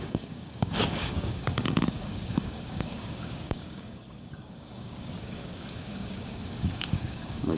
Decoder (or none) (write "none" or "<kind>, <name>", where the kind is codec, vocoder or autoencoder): codec, DAC